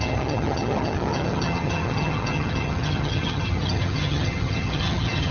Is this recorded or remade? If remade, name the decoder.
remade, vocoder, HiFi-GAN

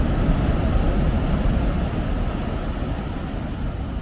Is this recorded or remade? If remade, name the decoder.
recorded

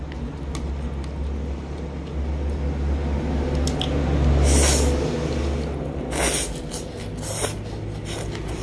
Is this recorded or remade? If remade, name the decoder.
recorded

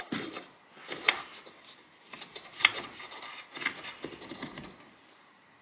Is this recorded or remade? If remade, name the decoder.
recorded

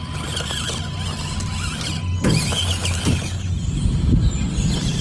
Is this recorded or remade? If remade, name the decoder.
recorded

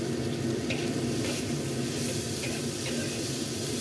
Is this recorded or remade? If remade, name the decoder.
recorded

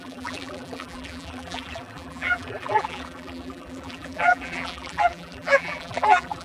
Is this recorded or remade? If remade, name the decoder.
remade, vocoder, BigVGAN v2